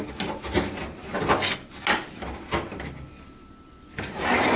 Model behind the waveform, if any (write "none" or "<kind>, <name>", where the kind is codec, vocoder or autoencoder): none